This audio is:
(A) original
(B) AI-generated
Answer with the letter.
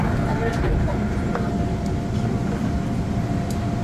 A